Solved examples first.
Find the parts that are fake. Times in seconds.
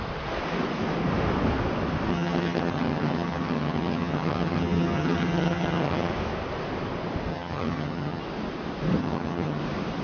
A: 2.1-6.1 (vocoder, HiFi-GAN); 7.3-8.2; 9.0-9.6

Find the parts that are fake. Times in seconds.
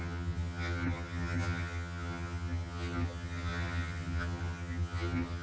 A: 0.0-5.4 (vocoder, HiFi-GAN)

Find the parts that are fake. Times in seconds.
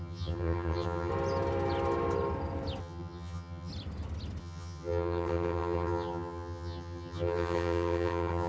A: 0.0-1.1 (vocoder, HiFi-GAN); 2.8-3.7; 4.4-8.5